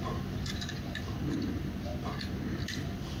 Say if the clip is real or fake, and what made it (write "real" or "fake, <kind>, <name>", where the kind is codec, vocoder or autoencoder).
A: real